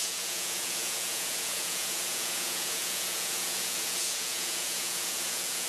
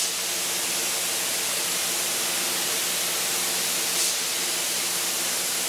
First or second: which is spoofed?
first